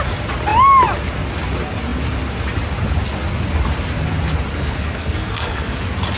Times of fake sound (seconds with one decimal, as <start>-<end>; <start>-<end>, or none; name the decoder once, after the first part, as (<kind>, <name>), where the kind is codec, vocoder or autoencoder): 4.5-5.8 (codec, SNAC)